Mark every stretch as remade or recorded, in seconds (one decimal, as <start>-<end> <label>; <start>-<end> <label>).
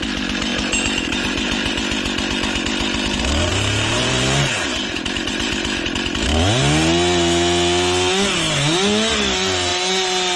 0.0-0.5 recorded; 0.5-1.7 remade; 1.7-3.5 recorded; 3.5-5.5 remade; 5.5-10.4 recorded